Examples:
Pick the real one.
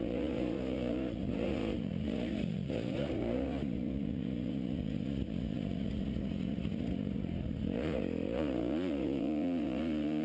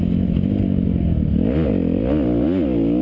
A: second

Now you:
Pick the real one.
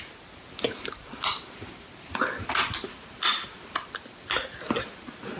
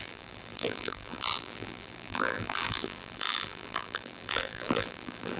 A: first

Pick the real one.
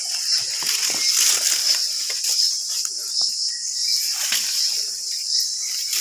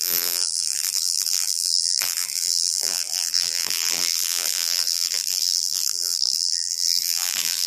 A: first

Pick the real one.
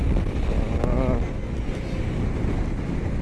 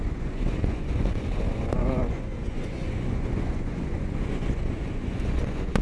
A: first